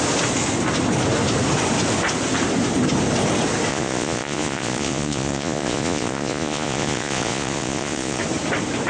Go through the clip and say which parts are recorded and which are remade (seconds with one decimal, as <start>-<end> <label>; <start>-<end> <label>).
0.0-3.7 recorded; 3.7-8.2 remade; 8.2-8.9 recorded